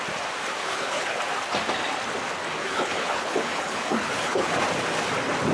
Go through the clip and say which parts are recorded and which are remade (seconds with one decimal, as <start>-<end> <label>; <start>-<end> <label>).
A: 0.0-0.6 recorded; 0.6-1.2 remade; 1.2-2.6 recorded; 2.6-4.6 remade; 4.6-5.5 recorded